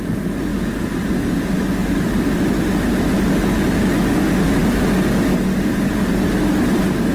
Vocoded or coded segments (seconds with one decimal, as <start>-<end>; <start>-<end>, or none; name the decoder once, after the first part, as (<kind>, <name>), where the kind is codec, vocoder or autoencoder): 1.8-2.5 (vocoder, BigVGAN v2)